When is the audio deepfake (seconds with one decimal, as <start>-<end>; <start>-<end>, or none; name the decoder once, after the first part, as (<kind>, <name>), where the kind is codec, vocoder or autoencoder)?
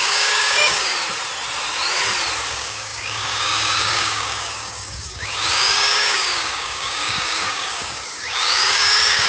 0.0-0.9 (codec, DAC); 2.5-9.3